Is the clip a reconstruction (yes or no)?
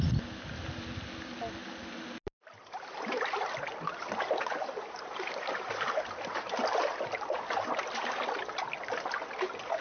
no